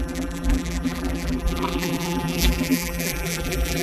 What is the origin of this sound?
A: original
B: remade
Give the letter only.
B